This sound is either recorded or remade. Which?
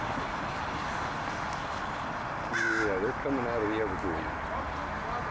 recorded